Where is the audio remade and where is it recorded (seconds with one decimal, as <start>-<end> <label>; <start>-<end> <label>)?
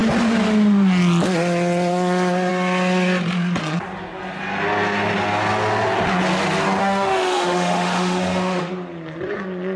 0.0-6.8 recorded; 6.8-8.7 remade; 8.7-9.8 recorded